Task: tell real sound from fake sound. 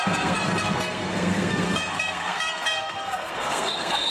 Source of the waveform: fake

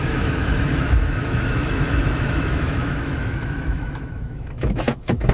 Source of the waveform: fake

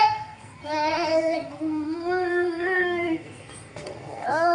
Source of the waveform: fake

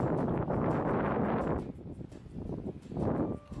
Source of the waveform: real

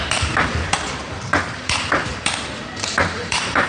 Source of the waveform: fake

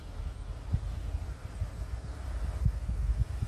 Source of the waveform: real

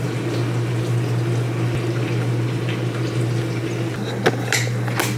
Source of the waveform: real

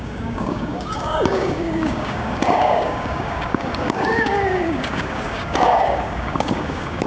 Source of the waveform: fake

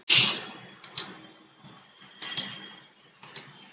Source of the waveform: real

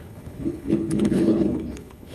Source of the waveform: fake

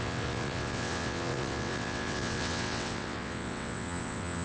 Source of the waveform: fake